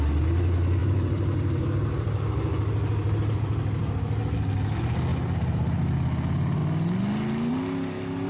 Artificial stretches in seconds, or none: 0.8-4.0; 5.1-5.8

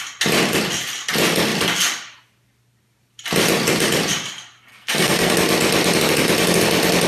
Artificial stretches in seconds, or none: 4.7-5.3

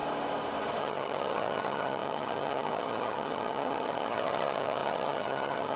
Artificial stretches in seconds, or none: 0.8-5.8

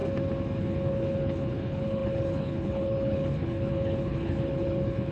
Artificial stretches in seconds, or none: 0.6-5.1

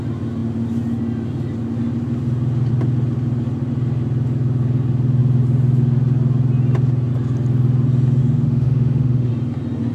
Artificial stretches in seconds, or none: 8.2-9.3

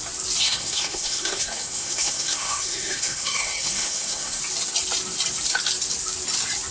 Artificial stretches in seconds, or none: 0.4-4.4

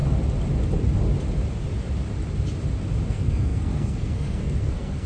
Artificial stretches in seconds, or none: 3.1-5.1

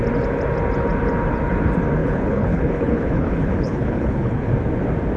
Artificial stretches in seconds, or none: 2.0-4.5